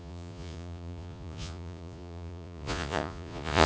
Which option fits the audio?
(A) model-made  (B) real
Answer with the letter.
A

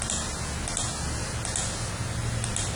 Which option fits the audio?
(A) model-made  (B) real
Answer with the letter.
B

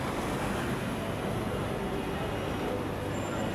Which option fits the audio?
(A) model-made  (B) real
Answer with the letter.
B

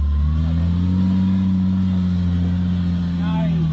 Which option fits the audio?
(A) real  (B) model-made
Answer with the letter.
A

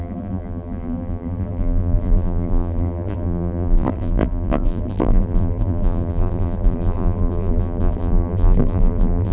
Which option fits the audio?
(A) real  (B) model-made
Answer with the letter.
B